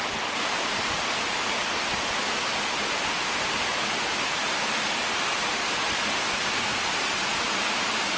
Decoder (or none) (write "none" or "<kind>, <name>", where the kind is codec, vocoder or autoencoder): none